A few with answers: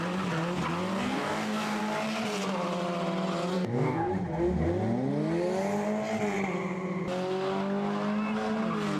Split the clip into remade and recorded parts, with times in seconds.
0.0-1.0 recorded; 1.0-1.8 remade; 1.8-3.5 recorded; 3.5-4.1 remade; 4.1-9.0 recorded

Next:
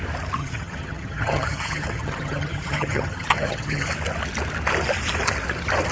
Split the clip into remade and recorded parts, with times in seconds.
0.0-0.4 recorded; 0.4-3.9 remade; 3.9-5.9 recorded

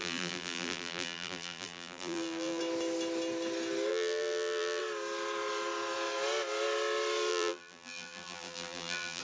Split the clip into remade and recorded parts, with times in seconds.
0.0-2.6 remade; 2.6-3.9 recorded; 3.9-4.8 remade; 4.8-7.3 recorded; 7.3-9.2 remade

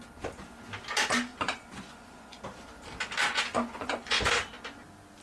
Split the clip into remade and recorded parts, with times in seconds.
0.0-1.3 recorded; 1.3-2.4 remade; 2.4-3.2 recorded; 3.2-4.3 remade; 4.3-5.2 recorded

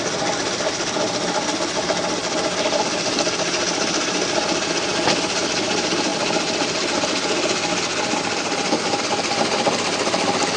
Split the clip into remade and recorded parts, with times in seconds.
0.0-2.2 recorded; 2.2-4.8 remade; 4.8-10.6 recorded

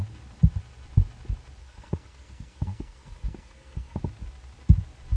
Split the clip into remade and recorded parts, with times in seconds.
0.0-1.6 recorded; 1.6-4.0 remade; 4.0-5.2 recorded